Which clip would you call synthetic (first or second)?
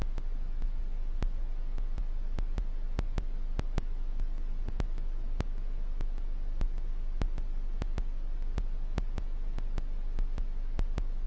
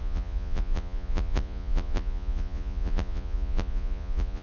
second